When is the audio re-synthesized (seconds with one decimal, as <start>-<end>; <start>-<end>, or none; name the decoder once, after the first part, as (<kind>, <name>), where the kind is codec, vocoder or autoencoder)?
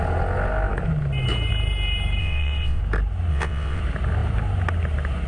2.2-2.8 (vocoder, WaveNeXt); 3.3-3.8